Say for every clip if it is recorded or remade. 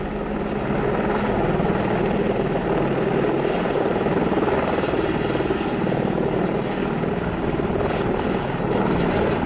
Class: recorded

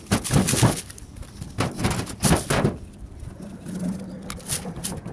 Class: recorded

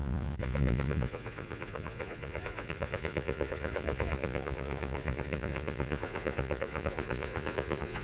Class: remade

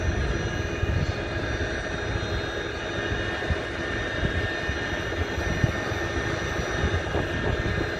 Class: recorded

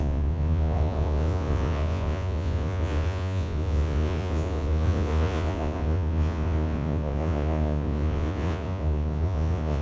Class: remade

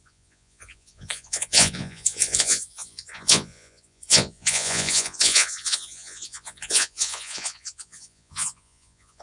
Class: remade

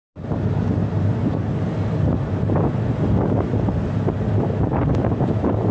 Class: recorded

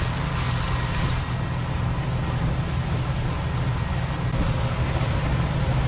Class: recorded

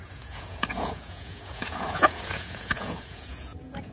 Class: remade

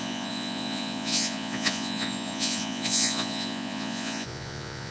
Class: remade